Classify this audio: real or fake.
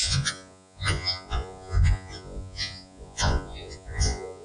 fake